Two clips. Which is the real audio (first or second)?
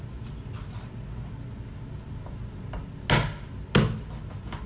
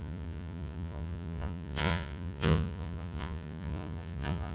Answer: first